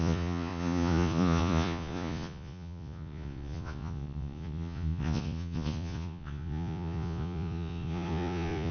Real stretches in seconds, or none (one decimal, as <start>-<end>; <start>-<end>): none